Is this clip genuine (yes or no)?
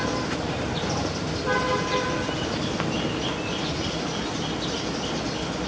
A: yes